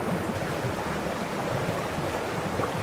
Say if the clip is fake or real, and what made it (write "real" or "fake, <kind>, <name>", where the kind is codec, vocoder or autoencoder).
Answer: real